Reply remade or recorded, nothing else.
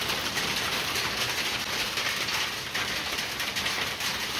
recorded